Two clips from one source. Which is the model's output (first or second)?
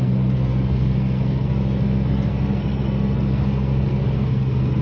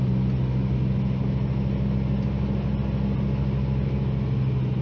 first